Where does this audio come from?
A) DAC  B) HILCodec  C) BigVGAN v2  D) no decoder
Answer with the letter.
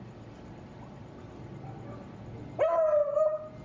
D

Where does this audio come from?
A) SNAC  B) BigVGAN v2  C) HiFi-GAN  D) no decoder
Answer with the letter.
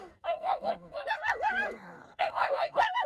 A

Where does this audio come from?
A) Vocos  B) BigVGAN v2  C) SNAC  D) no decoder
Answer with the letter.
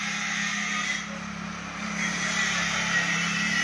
B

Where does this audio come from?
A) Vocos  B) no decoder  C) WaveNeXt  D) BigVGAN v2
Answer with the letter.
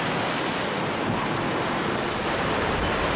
B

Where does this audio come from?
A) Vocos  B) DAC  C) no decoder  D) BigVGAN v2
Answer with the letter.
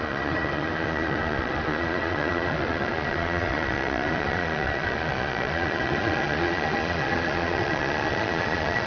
A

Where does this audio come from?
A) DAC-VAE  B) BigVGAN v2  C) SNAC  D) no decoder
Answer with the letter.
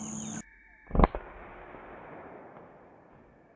D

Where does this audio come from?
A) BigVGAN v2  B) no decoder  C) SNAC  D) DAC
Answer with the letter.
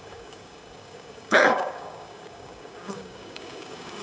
D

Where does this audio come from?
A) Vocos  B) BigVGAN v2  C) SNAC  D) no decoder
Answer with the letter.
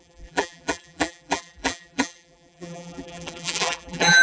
B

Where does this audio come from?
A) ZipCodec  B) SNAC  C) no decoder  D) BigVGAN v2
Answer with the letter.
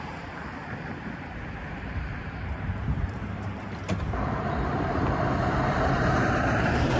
D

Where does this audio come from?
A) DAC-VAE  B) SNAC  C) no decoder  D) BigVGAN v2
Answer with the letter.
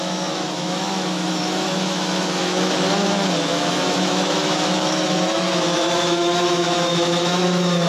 A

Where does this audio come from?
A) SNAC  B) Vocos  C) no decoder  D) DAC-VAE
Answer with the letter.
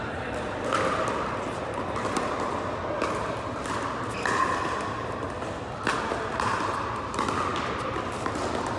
C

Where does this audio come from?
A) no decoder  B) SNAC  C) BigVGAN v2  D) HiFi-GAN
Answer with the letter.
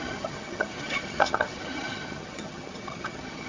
D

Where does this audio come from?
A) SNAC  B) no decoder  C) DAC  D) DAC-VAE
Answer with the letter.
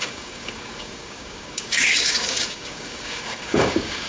C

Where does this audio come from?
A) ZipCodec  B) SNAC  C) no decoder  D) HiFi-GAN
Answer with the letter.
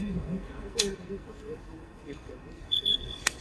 B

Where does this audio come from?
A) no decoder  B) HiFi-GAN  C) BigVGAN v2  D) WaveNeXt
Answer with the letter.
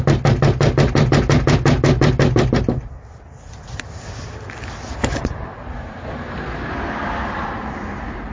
A